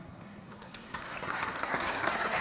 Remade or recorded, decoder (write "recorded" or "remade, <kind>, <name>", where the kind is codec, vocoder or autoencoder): remade, codec, SNAC